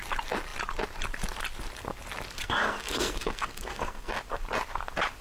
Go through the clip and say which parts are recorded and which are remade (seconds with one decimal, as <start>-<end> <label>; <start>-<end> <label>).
0.0-2.4 recorded; 2.4-4.1 remade; 4.1-5.2 recorded